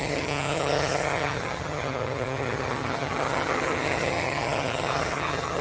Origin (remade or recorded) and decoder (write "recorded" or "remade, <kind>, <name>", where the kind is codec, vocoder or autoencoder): remade, vocoder, HiFi-GAN